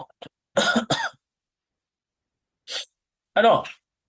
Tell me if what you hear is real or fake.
real